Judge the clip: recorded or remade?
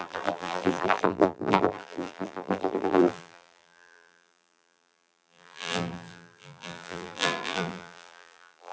remade